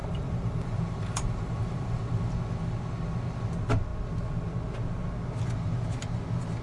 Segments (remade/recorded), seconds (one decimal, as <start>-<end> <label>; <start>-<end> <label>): 0.0-2.3 remade; 2.3-6.6 recorded